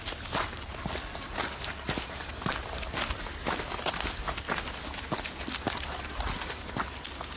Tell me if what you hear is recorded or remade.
recorded